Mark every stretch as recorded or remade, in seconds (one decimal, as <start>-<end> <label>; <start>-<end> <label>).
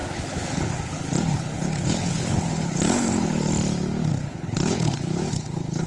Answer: 0.0-3.5 remade; 3.5-4.1 recorded; 4.1-5.9 remade